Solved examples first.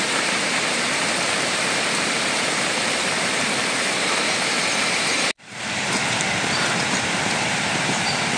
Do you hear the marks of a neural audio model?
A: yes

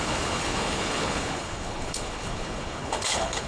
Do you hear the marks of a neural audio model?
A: yes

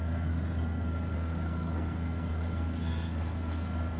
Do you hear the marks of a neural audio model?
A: yes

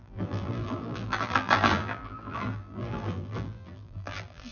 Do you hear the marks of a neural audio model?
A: yes